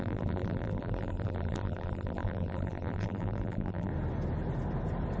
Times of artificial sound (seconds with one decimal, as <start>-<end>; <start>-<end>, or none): 0.0-3.9